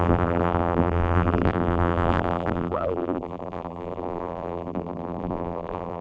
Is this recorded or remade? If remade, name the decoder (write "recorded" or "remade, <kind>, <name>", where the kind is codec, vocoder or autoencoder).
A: remade, vocoder, BigVGAN v2